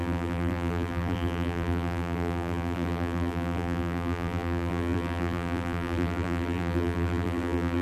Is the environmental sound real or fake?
fake